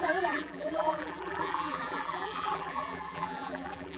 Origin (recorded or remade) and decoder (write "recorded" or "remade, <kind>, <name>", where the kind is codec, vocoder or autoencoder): remade, vocoder, BigVGAN v2